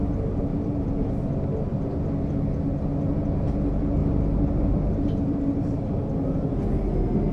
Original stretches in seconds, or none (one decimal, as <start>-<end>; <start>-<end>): 0.0-0.5; 1.1-4.0; 5.8-7.3

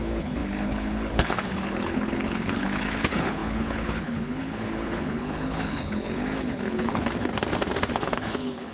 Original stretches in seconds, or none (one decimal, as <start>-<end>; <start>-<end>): 7.3-7.9

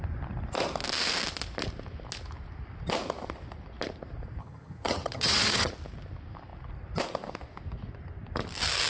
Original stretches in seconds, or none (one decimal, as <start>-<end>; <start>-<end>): 0.0-4.4; 5.7-8.9

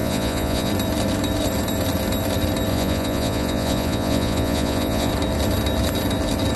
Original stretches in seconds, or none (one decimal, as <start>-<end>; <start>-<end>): 0.7-2.7; 5.1-6.6

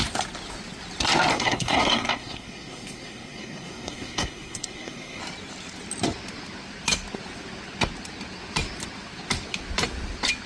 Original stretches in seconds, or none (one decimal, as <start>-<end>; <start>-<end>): 0.0-1.3; 5.2-10.5

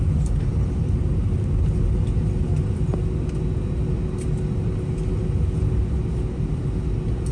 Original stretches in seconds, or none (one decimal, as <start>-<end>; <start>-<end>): 0.0-7.3

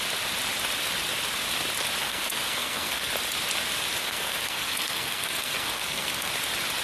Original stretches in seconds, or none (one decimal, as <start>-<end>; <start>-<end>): 0.0-2.0; 3.1-4.0; 6.3-6.8